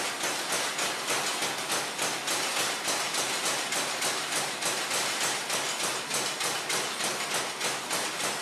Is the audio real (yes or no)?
yes